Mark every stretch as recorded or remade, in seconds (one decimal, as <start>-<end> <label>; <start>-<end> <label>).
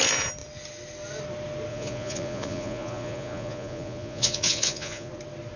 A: 0.0-1.7 recorded; 1.7-5.1 remade; 5.1-5.6 recorded